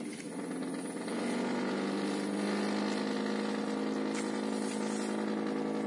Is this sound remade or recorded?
recorded